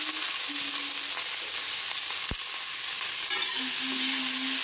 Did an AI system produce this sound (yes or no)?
no